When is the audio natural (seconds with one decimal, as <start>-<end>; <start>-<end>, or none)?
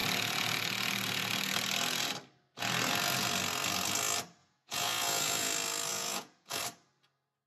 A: 0.0-4.4; 5.5-5.9; 6.6-7.5